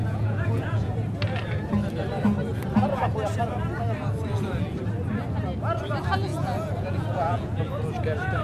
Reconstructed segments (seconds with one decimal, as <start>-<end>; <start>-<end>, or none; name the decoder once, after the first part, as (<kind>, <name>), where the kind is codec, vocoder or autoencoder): 0.0-0.9 (vocoder, Vocos); 6.3-7.7